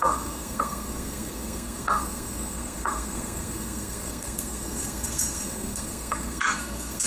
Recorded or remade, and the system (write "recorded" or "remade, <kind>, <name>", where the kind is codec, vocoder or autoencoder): remade, codec, SNAC